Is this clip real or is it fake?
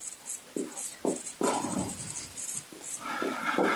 real